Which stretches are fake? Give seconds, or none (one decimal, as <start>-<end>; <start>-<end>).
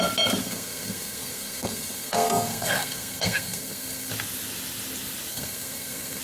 0.4-4.1; 5.3-6.2